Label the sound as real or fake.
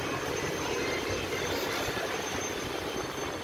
fake